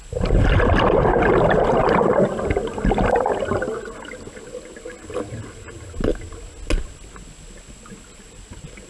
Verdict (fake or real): real